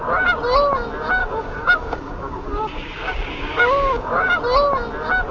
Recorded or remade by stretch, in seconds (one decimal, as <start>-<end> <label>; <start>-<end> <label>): 0.0-1.2 recorded; 1.2-4.4 remade; 4.4-5.3 recorded